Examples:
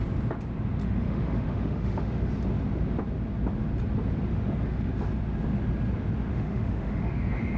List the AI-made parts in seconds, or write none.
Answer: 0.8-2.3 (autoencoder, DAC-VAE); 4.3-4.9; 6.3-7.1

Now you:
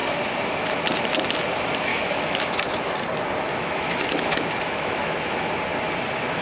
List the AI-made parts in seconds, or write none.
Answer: 1.9-2.9 (autoencoder, DAC-VAE); 3.5-5.5

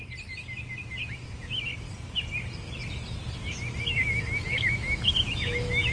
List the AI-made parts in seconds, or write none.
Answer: 0.9-1.7 (autoencoder, DAC-VAE); 3.8-5.9

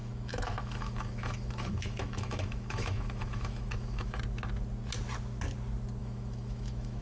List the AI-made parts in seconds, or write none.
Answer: 0.0-4.2 (autoencoder, DAC-VAE); 6.0-7.0

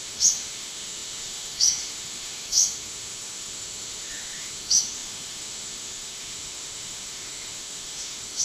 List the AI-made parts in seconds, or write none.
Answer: 0.0-8.4 (autoencoder, DAC-VAE)

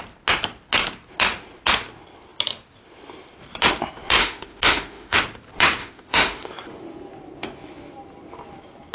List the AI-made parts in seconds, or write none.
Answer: 4.2-5.2 (autoencoder, DAC-VAE); 5.8-6.5